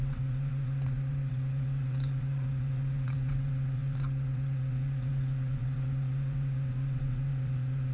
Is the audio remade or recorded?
remade